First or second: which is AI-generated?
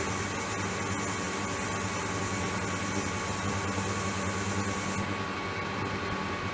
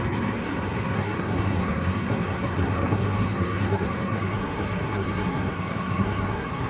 second